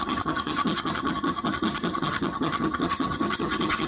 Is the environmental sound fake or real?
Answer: fake